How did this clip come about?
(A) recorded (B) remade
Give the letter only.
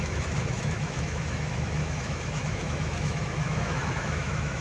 B